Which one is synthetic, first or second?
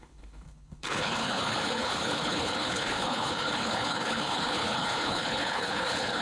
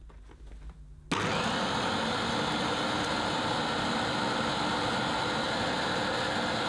first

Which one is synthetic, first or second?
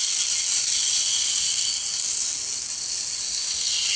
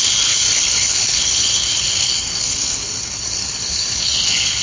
second